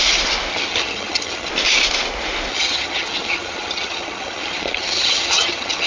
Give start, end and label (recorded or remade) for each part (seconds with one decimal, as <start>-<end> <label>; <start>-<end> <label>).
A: 0.0-0.5 recorded; 0.5-1.5 remade; 1.5-2.5 recorded; 2.5-5.9 remade